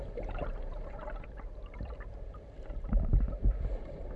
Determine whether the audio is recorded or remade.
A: remade